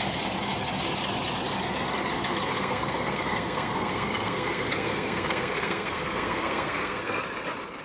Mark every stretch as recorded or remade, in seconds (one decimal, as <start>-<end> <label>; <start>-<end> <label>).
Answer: 0.0-2.5 recorded; 2.5-7.2 remade; 7.2-7.8 recorded